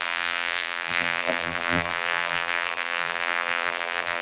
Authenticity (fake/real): fake